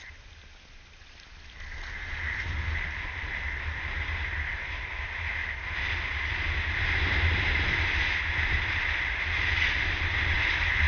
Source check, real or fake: real